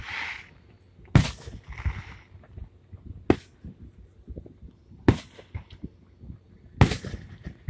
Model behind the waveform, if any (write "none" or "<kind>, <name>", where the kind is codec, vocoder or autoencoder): none